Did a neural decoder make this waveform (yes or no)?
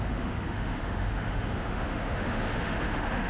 yes